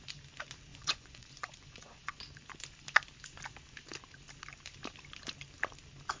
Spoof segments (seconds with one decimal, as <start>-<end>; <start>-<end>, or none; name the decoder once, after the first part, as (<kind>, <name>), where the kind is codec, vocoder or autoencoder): 0.7-2.2 (vocoder, Vocos)